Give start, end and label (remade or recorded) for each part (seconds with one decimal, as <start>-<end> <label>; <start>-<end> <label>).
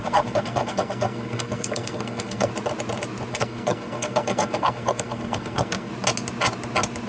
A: 0.0-2.5 remade; 2.5-3.3 recorded; 3.3-5.9 remade; 5.9-7.1 recorded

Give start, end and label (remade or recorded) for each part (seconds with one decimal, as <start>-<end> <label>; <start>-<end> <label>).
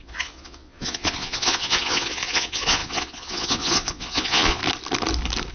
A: 0.0-4.6 remade; 4.6-5.5 recorded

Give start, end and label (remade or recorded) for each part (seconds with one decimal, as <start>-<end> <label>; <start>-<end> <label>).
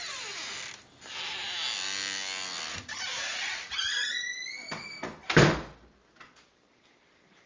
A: 0.0-2.7 recorded; 2.7-4.7 remade; 4.7-7.5 recorded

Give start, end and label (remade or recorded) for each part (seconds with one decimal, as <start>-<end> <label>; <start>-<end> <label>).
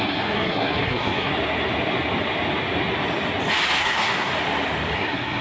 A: 0.0-1.3 remade; 1.3-3.8 recorded; 3.8-4.3 remade; 4.3-4.9 recorded; 4.9-5.4 remade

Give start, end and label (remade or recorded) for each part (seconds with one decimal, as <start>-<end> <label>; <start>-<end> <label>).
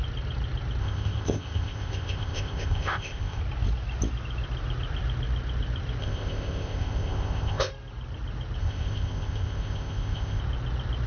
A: 0.0-0.8 recorded; 0.8-3.4 remade; 3.4-6.0 recorded; 6.0-7.7 remade; 7.7-8.6 recorded; 8.6-10.4 remade; 10.4-11.1 recorded